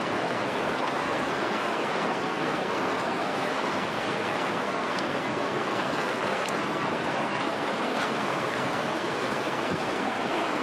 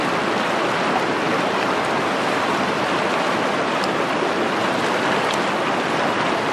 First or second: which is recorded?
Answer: second